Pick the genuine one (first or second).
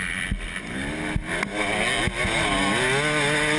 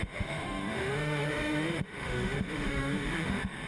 first